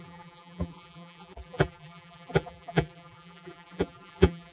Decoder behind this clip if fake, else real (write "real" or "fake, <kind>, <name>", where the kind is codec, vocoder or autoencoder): fake, vocoder, BigVGAN v2